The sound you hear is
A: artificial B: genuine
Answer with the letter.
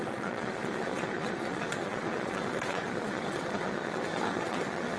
A